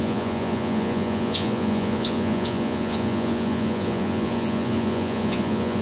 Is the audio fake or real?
fake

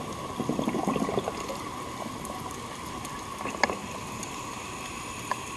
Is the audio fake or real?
real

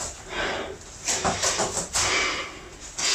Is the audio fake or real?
real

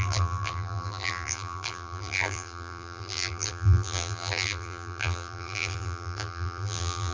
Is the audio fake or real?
fake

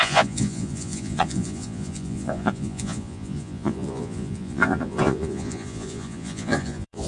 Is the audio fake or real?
fake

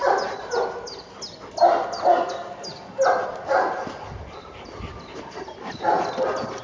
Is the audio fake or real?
real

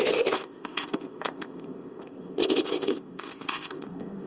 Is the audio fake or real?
fake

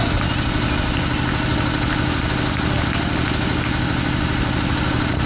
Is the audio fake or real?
real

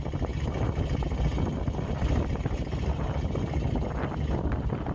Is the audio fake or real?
real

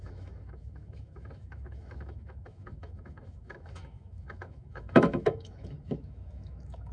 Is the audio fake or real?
fake